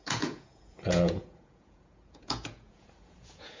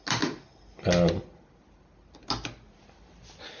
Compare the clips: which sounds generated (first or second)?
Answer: first